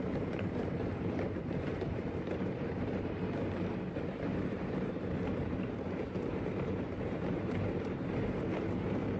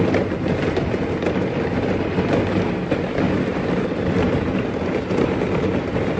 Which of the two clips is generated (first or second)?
first